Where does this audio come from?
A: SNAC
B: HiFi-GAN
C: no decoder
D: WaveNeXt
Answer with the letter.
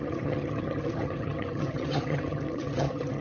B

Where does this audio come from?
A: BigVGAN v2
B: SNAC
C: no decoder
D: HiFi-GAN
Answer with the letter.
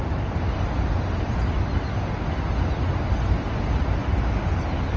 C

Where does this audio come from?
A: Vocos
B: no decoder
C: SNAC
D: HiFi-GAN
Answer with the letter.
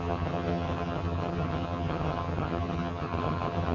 D